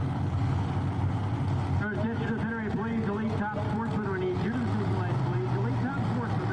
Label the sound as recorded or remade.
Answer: recorded